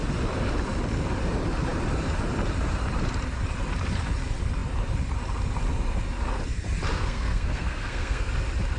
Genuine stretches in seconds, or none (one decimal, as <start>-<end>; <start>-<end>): 0.0-6.9; 8.3-8.8